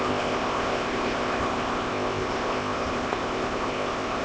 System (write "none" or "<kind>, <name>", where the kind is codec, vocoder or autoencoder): codec, ZipCodec